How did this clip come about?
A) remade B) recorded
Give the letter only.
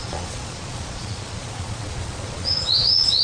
A